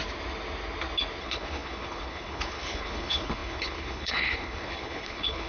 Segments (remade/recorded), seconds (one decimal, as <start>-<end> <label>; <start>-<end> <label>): 0.0-1.2 recorded; 1.2-5.5 remade